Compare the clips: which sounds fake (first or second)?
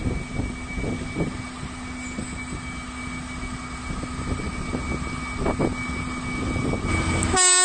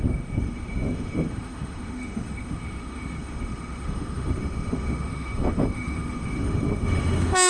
second